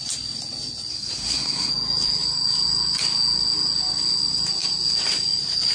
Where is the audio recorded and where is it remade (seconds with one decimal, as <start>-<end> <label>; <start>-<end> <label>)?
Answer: 0.0-0.9 recorded; 0.9-1.7 remade; 1.7-5.7 recorded